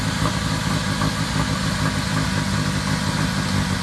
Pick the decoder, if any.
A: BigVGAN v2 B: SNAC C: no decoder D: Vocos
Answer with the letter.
C